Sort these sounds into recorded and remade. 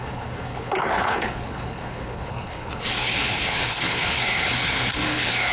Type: remade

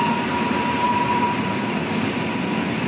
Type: recorded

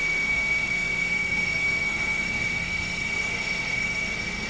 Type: remade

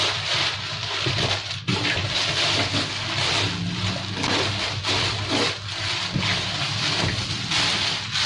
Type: recorded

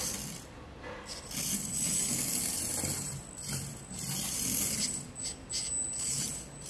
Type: recorded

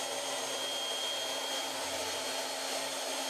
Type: recorded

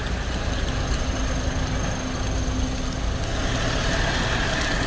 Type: recorded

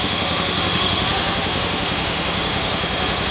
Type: remade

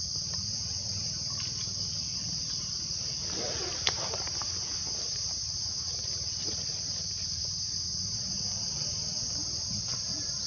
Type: recorded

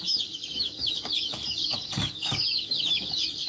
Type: remade